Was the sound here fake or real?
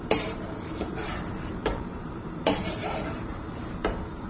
fake